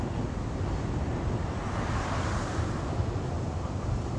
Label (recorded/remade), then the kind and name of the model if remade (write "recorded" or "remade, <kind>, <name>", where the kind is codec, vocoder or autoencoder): recorded